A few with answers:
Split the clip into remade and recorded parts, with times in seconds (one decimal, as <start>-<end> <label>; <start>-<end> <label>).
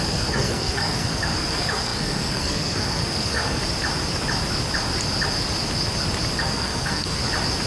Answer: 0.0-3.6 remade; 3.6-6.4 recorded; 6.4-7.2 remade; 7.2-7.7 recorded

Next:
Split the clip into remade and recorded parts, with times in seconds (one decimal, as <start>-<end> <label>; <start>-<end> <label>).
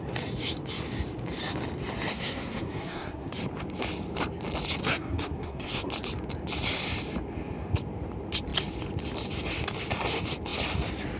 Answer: 0.0-2.1 recorded; 2.1-3.3 remade; 3.3-4.8 recorded; 4.8-5.9 remade; 5.9-11.2 recorded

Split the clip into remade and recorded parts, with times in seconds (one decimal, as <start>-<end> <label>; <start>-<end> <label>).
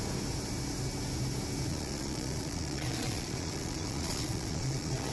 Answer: 0.0-1.7 recorded; 1.7-5.1 remade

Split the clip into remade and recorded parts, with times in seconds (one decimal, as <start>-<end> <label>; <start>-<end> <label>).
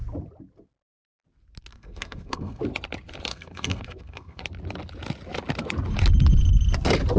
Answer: 0.0-1.7 recorded; 1.7-2.6 remade; 2.6-3.3 recorded; 3.3-4.4 remade; 4.4-7.2 recorded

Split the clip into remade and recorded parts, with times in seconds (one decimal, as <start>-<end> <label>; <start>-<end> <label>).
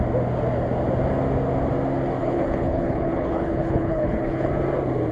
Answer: 0.0-2.2 recorded; 2.2-4.5 remade; 4.5-5.1 recorded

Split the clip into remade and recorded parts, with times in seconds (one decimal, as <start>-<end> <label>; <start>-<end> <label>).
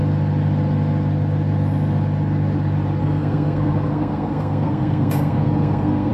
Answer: 0.0-3.0 recorded; 3.0-6.1 remade